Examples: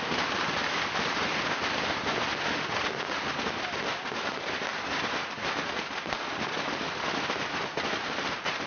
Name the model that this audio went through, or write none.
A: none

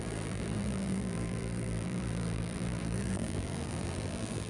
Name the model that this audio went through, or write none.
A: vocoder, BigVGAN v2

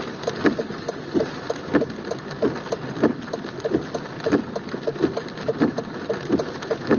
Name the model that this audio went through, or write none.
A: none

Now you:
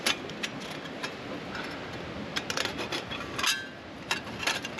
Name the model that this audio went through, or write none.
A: none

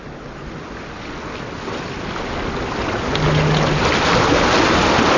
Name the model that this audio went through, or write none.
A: none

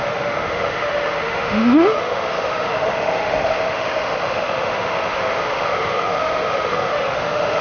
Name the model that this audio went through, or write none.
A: autoencoder, DAC-VAE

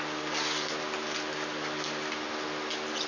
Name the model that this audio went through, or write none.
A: none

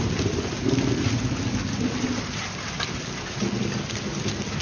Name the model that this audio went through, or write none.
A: none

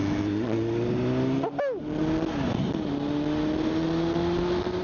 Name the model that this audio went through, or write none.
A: none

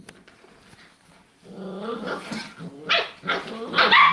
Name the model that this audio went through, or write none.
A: none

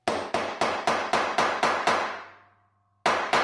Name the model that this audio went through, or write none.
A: none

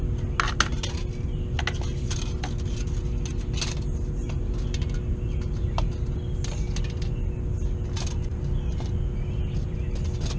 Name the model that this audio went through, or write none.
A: none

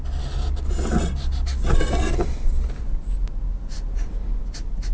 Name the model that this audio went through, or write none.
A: none